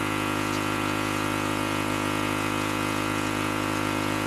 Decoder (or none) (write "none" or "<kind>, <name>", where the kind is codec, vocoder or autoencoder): vocoder, Vocos